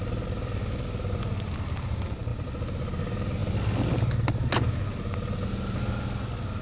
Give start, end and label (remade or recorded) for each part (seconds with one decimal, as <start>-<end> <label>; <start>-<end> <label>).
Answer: 0.0-6.6 recorded